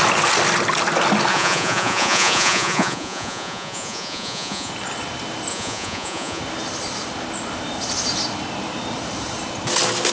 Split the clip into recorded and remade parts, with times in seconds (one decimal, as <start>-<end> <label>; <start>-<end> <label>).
0.0-1.3 recorded; 1.3-4.7 remade; 4.7-5.5 recorded; 5.5-6.4 remade; 6.4-10.1 recorded